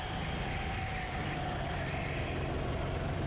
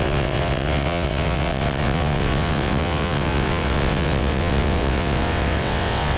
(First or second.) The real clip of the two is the first